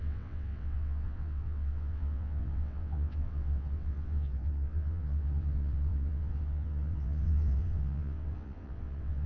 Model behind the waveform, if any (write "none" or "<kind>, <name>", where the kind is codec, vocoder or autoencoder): vocoder, WaveNeXt